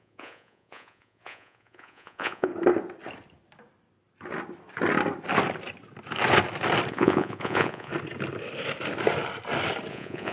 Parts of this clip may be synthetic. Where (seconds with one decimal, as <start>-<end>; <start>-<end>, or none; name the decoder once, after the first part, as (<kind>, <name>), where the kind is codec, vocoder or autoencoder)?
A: 0.0-2.5 (vocoder, Vocos); 6.9-7.9; 9.9-10.3